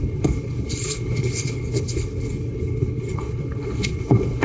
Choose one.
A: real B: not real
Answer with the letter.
B